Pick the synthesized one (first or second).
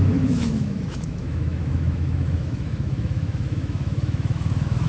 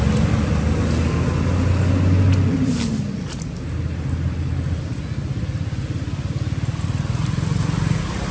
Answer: first